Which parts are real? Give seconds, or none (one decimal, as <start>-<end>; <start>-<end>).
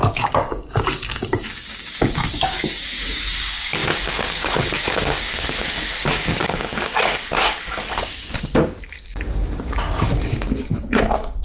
none